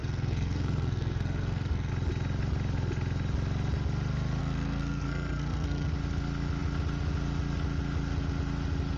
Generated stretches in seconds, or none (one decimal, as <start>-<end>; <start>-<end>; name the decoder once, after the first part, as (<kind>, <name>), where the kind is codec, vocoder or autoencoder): 0.0-1.9 (codec, SNAC); 4.4-5.9